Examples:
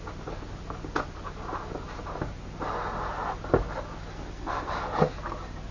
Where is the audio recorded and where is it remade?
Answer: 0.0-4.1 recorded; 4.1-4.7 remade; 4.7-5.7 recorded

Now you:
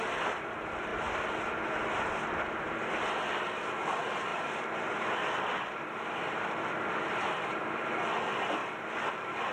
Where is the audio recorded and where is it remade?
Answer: 0.0-0.9 remade; 0.9-2.6 recorded; 2.6-8.6 remade; 8.6-9.1 recorded; 9.1-9.5 remade

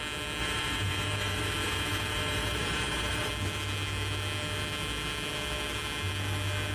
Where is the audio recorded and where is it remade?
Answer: 0.0-0.4 recorded; 0.4-3.3 remade; 3.3-6.7 recorded

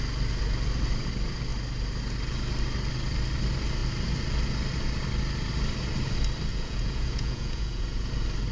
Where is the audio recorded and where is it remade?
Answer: 0.0-6.5 recorded; 6.5-8.1 remade; 8.1-8.5 recorded

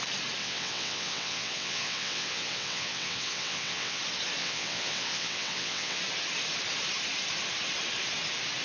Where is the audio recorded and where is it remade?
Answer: 0.0-0.4 recorded; 0.4-4.0 remade; 4.0-4.4 recorded; 4.4-6.0 remade; 6.0-8.6 recorded

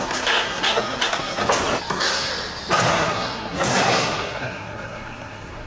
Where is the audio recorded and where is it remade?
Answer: 0.0-1.4 remade; 1.4-1.9 recorded; 1.9-2.3 remade; 2.3-2.9 recorded; 2.9-5.7 remade

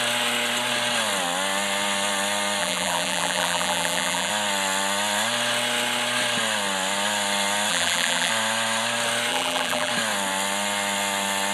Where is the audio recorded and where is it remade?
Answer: 0.0-2.6 recorded; 2.6-4.3 remade; 4.3-7.7 recorded; 7.7-8.3 remade; 8.3-9.3 recorded; 9.3-9.9 remade; 9.9-11.5 recorded

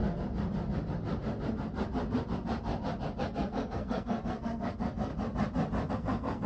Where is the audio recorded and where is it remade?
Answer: 0.0-3.2 recorded; 3.2-5.1 remade; 5.1-5.9 recorded; 5.9-6.5 remade